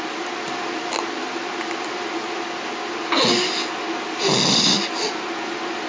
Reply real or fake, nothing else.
real